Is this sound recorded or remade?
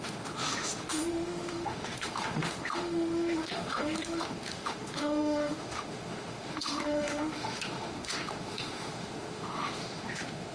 remade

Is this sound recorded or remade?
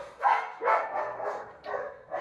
remade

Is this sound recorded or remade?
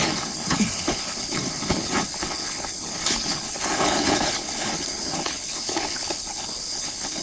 remade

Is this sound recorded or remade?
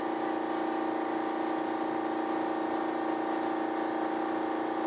recorded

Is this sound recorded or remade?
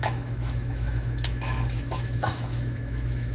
remade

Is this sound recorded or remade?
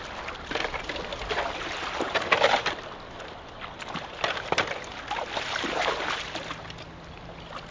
recorded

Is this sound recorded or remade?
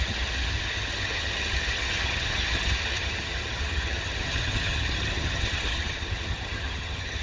remade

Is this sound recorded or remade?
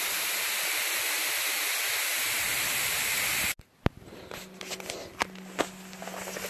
recorded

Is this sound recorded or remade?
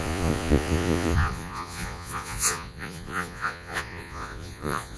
remade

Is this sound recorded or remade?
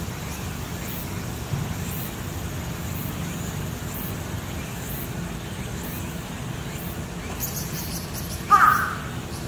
recorded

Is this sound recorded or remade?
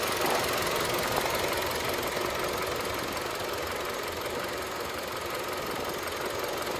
recorded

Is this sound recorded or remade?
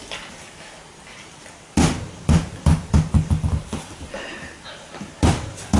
recorded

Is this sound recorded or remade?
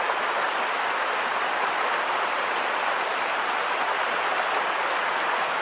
recorded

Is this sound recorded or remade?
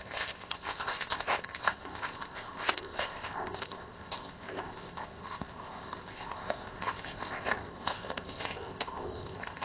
remade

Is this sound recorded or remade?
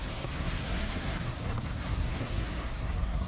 remade